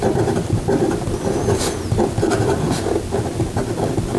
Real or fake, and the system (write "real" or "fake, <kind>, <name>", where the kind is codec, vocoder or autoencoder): real